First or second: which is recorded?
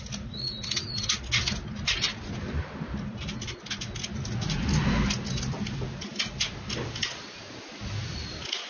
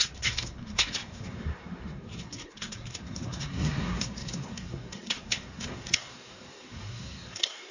first